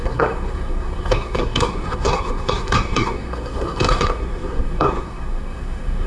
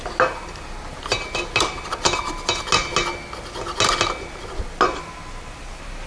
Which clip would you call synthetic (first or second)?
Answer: first